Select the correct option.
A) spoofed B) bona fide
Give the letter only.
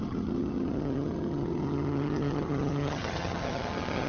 A